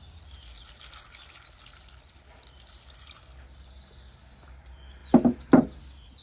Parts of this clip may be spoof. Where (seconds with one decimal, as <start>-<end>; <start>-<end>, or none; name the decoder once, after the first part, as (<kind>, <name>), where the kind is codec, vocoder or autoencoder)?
none